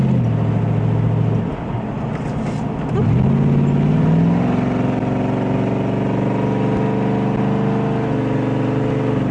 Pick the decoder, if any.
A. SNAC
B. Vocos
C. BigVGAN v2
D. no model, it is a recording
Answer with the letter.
D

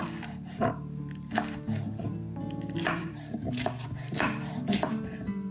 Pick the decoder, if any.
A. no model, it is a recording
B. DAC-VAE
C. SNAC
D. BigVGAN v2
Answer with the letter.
D